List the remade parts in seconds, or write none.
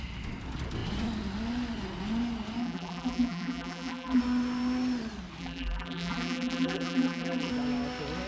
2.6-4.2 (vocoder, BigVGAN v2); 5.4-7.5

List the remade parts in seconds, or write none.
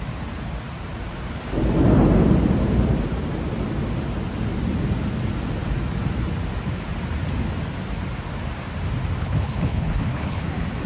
9.2-10.4 (codec, HILCodec)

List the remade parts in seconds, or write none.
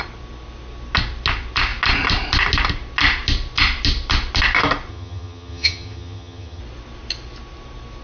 4.9-6.6 (vocoder, HiFi-GAN)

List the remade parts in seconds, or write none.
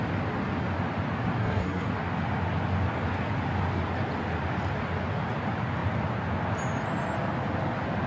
1.4-1.9 (codec, SNAC)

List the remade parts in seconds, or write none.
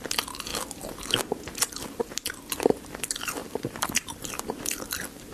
3.4-4.5 (vocoder, BigVGAN v2)